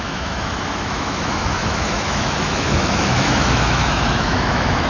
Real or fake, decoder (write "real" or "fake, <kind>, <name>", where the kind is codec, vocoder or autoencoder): fake, autoencoder, DAC-VAE